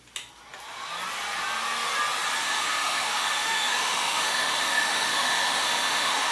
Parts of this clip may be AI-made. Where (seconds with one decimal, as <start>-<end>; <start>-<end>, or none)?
2.4-6.3